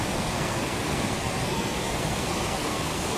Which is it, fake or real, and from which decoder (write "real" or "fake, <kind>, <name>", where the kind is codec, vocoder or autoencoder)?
fake, codec, SNAC